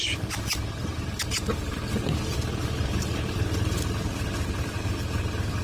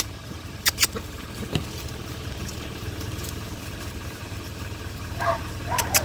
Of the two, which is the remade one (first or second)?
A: second